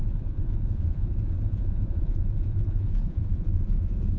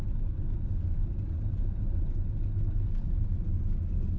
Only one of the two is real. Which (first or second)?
second